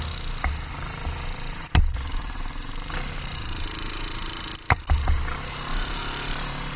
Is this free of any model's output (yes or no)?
no